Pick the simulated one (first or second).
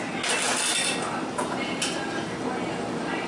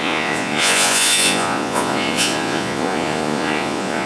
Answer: second